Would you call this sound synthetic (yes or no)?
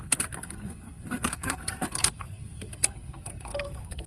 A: yes